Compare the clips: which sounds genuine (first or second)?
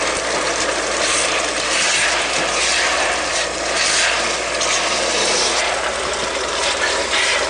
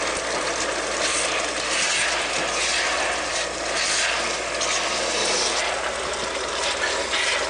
second